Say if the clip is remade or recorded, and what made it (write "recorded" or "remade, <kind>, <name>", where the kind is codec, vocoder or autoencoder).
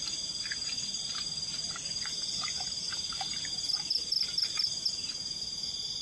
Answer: recorded